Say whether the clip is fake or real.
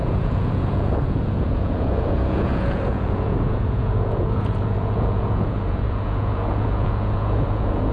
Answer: fake